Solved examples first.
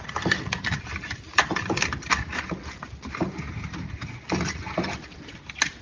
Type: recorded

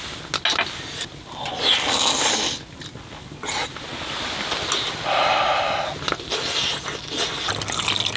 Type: recorded